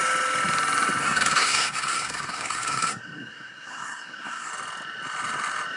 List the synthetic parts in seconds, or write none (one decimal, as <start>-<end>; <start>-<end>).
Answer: 1.0-4.5